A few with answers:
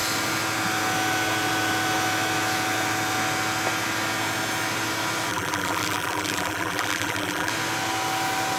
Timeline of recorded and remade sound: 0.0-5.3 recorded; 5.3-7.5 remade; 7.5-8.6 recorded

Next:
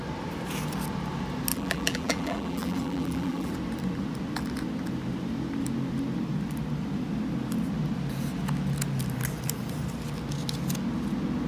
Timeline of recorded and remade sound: 0.0-1.5 recorded; 1.5-3.5 remade; 3.5-11.5 recorded

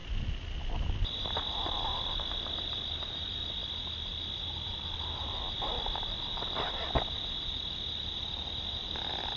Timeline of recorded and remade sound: 0.0-3.6 remade; 3.6-8.2 recorded; 8.2-9.4 remade

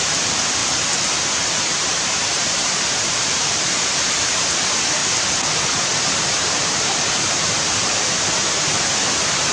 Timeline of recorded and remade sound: 0.0-0.6 remade; 0.6-1.1 recorded; 1.1-5.0 remade; 5.0-6.1 recorded; 6.1-9.5 remade

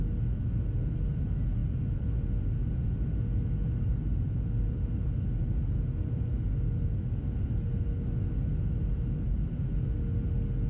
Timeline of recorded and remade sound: 0.0-8.8 recorded; 8.8-10.0 remade; 10.0-10.7 recorded

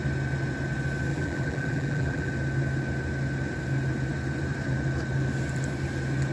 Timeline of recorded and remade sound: 0.0-1.1 recorded; 1.1-2.3 remade; 2.3-6.3 recorded